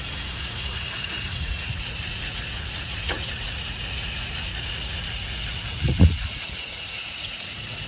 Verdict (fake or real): fake